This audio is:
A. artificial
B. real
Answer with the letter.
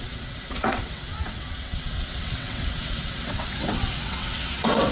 A